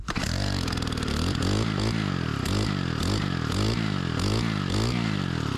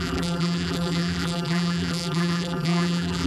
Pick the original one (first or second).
first